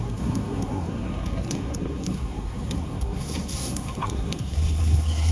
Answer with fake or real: fake